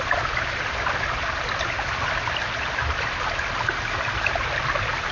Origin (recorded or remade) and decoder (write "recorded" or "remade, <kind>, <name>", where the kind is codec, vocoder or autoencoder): recorded